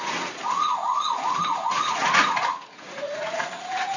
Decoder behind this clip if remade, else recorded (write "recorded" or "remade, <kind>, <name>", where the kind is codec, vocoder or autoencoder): remade, vocoder, Vocos